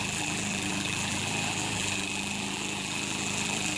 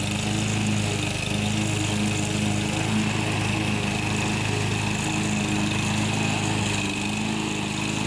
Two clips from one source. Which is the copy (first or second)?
first